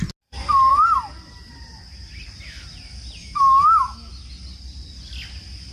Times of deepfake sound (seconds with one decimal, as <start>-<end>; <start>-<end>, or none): 3.2-4.1